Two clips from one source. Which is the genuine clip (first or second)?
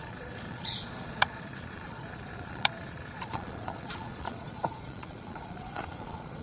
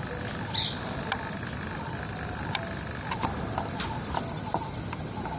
second